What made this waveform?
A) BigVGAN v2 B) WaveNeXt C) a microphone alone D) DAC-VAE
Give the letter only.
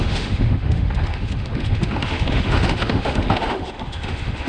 D